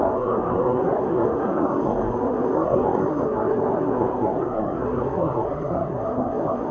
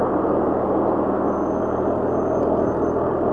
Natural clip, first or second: second